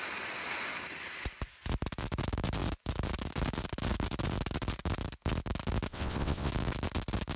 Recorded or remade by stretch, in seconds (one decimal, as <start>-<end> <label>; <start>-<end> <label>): 0.0-5.9 recorded; 5.9-6.5 remade; 6.5-7.4 recorded